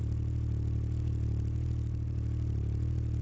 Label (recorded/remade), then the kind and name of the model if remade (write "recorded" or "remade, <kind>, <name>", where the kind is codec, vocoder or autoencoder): remade, vocoder, BigVGAN v2